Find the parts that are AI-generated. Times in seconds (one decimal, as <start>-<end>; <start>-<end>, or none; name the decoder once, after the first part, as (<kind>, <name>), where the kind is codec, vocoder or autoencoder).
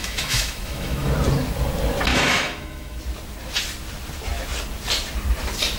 0.0-1.1 (autoencoder, DAC-VAE); 2.1-3.0